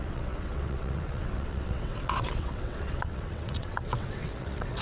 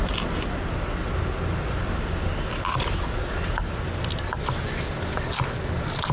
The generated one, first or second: first